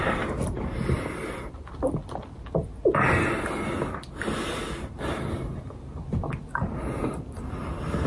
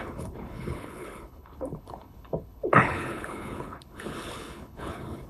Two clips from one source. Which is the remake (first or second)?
second